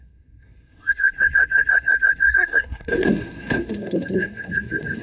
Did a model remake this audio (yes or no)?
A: yes